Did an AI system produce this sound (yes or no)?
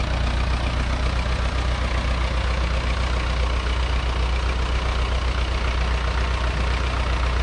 no